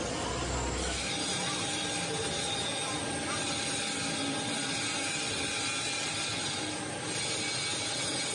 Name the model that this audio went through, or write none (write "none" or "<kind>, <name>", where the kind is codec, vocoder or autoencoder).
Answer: none